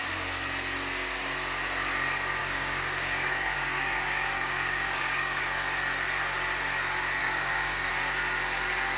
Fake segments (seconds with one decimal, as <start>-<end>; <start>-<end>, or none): 2.4-5.4; 7.2-7.9